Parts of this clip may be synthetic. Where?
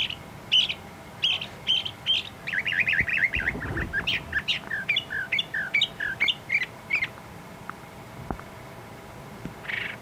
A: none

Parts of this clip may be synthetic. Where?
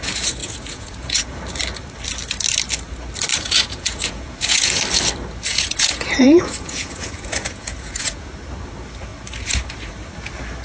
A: 0.4-1.4 (vocoder, Vocos); 3.3-4.8; 5.5-8.3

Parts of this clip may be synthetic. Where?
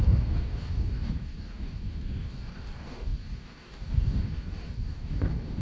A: 0.0-5.6 (codec, DAC)